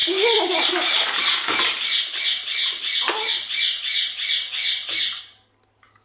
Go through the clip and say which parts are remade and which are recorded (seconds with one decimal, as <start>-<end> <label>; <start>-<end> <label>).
0.0-6.0 recorded